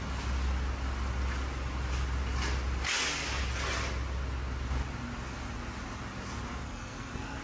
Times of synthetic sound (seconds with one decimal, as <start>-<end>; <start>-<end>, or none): 6.6-7.4